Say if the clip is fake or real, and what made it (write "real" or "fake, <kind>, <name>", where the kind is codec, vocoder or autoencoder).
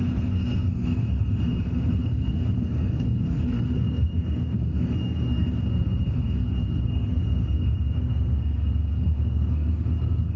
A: fake, codec, SNAC